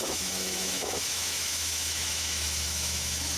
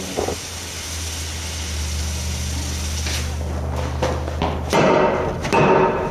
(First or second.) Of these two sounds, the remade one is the first